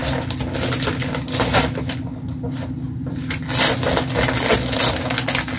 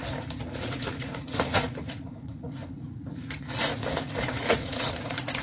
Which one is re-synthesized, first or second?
second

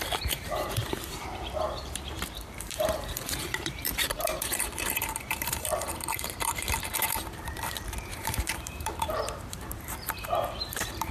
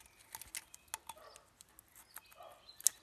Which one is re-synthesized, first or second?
first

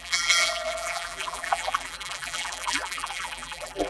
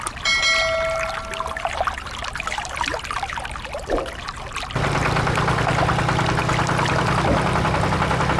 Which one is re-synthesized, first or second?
first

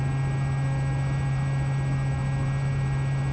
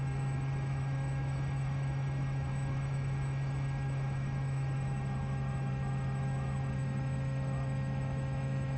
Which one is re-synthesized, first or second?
second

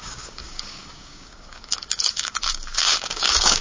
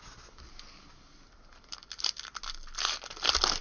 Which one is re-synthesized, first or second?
first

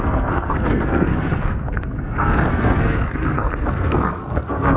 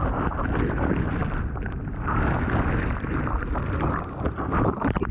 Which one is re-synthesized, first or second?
first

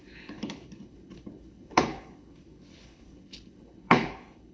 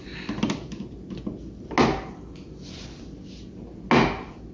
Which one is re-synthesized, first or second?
first